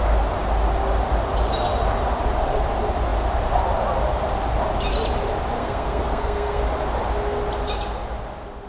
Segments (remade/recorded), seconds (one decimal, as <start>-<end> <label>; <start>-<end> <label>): 0.0-5.6 recorded; 5.6-6.6 remade; 6.6-8.7 recorded